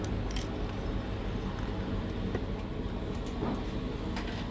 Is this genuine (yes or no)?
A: yes